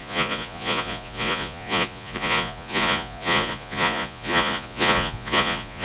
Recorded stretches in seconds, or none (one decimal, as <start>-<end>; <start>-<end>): none